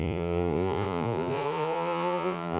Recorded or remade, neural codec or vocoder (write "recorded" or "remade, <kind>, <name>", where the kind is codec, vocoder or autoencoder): remade, vocoder, Vocos